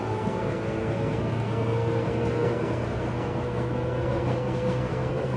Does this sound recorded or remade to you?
remade